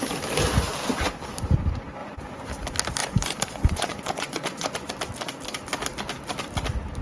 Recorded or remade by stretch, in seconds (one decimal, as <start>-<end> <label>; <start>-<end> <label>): 0.0-2.0 recorded; 2.0-2.5 remade; 2.5-3.0 recorded; 3.0-4.9 remade; 4.9-7.0 recorded